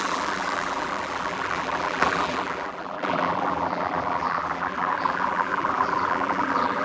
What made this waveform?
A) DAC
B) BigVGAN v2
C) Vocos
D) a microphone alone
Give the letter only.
B